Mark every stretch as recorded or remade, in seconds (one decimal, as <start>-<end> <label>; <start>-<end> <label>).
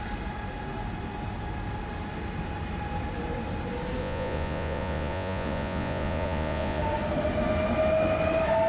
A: 0.0-4.0 recorded; 4.0-6.8 remade; 6.8-8.7 recorded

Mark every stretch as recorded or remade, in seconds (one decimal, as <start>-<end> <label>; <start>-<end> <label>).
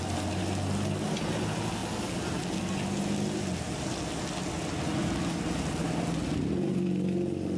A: 0.0-7.6 recorded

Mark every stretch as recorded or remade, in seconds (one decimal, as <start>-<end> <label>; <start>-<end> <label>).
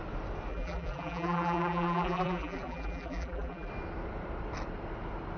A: 0.0-0.5 recorded; 0.5-3.7 remade; 3.7-5.4 recorded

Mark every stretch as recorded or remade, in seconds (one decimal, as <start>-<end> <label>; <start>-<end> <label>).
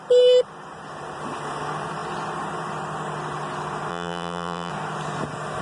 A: 0.0-3.9 recorded; 3.9-4.7 remade; 4.7-5.6 recorded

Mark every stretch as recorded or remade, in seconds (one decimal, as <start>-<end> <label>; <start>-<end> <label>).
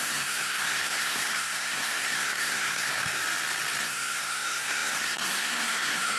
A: 0.0-3.2 remade; 3.2-3.8 recorded; 3.8-6.2 remade